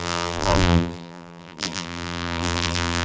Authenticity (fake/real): fake